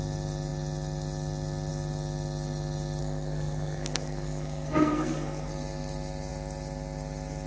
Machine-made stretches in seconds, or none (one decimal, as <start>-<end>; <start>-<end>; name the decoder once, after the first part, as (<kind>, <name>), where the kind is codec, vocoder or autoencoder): 3.0-5.5 (codec, SNAC)